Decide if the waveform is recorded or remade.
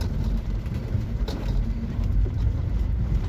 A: remade